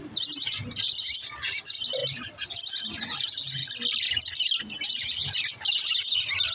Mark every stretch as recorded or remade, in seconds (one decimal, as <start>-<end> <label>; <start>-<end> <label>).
0.0-6.5 recorded